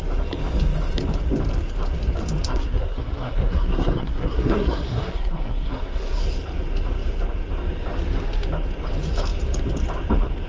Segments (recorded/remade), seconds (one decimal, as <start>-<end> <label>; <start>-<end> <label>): 0.0-2.5 recorded; 2.5-6.2 remade; 6.2-10.5 recorded